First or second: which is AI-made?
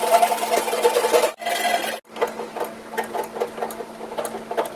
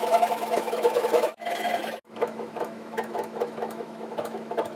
second